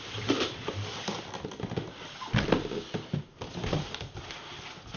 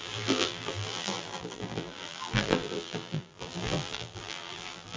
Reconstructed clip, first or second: second